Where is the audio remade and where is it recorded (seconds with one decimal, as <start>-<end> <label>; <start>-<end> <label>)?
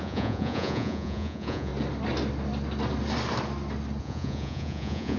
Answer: 0.0-1.7 remade; 1.7-4.0 recorded; 4.0-5.2 remade